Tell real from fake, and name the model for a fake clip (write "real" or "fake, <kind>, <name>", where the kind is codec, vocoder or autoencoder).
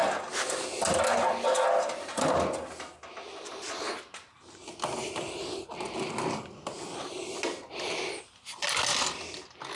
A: real